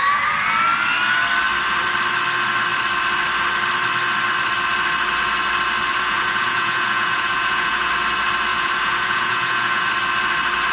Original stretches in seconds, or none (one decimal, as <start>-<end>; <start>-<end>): 0.0-5.9; 7.9-8.5; 9.9-10.7